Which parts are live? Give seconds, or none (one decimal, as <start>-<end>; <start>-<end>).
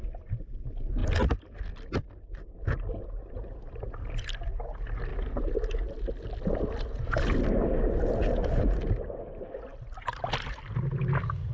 0.0-11.5